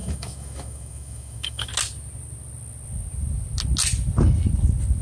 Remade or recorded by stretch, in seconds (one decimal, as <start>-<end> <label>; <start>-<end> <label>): 0.0-1.7 remade; 1.7-5.0 recorded